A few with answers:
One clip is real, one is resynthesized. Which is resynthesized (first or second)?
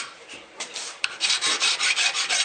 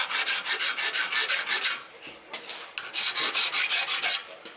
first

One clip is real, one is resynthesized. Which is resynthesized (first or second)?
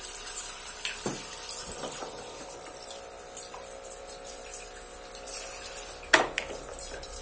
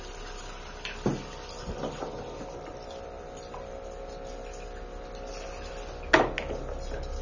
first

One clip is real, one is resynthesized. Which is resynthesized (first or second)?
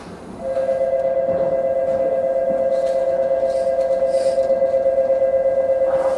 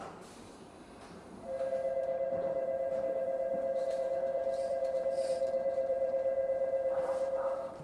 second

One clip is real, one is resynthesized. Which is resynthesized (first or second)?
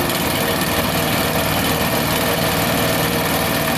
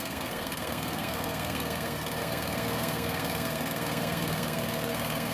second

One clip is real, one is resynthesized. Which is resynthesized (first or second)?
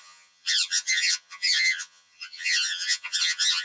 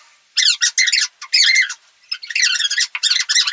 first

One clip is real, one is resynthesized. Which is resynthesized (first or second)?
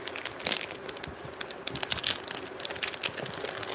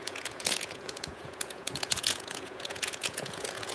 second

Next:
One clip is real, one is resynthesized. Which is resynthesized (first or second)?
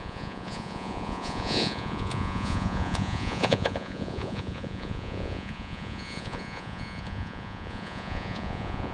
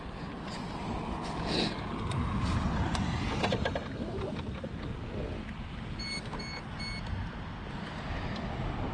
first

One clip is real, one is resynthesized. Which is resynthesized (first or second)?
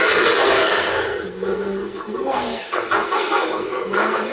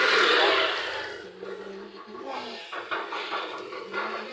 first